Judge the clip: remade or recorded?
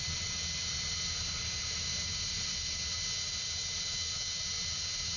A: recorded